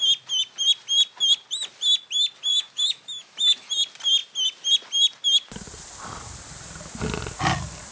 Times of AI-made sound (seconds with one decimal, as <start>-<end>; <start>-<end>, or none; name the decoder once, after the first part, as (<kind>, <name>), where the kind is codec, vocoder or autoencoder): 2.5-3.7 (autoencoder, DAC-VAE)